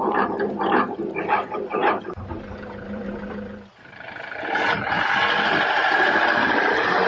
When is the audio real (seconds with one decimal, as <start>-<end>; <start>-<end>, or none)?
none